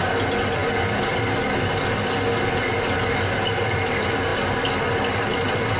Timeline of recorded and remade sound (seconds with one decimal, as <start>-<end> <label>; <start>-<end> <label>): 0.0-5.8 recorded